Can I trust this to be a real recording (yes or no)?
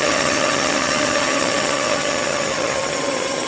no